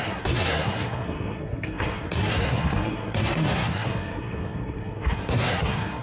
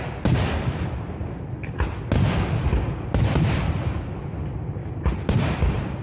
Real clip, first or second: second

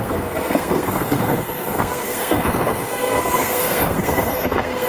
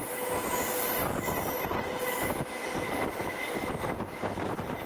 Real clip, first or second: second